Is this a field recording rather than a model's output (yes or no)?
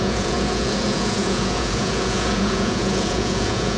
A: no